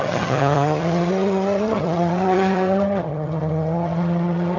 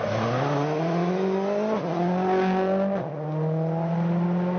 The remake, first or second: first